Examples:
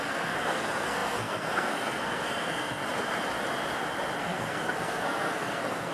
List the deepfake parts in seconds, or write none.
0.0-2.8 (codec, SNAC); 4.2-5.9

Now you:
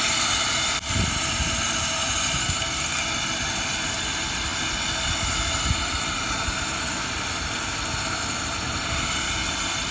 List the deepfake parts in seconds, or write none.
2.4-3.0 (codec, SNAC)

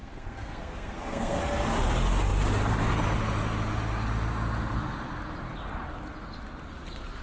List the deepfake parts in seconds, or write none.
0.0-1.4 (codec, SNAC)